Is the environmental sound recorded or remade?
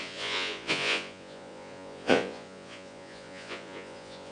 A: remade